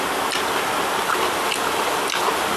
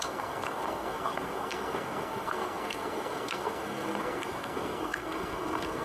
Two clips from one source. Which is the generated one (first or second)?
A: second